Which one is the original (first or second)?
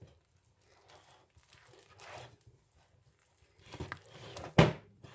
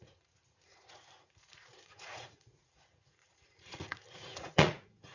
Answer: first